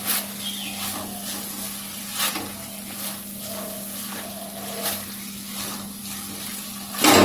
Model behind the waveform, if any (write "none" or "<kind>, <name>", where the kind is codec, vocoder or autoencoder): none